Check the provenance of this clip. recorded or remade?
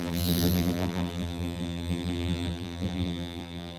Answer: remade